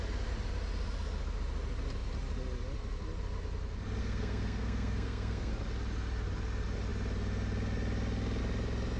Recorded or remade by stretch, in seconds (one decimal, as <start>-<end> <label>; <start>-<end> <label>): 0.0-4.0 recorded; 4.0-5.5 remade; 5.5-9.0 recorded